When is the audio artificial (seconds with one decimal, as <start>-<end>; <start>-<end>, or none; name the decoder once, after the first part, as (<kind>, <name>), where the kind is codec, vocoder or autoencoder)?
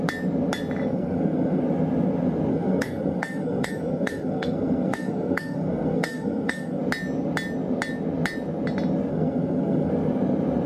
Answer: 0.9-1.6 (codec, SNAC); 2.5-6.8; 9.1-9.9